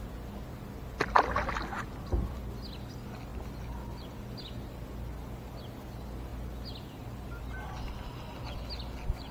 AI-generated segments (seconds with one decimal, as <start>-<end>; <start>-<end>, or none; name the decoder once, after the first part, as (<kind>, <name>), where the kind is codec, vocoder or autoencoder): none